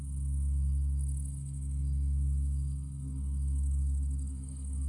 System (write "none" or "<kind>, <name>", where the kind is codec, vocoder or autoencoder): none